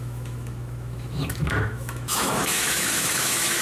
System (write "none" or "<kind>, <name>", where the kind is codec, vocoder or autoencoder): autoencoder, DAC-VAE